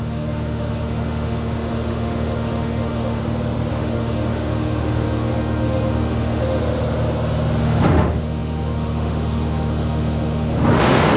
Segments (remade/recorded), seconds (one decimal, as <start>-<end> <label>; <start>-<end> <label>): 0.0-3.2 remade; 3.2-3.7 recorded; 3.7-6.6 remade; 6.6-7.6 recorded; 7.6-11.2 remade